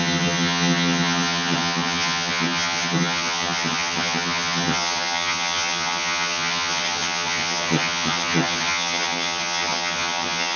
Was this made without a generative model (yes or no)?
no